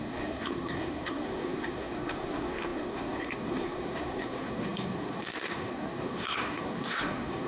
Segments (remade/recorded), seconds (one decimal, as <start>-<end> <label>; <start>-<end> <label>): 0.0-7.5 remade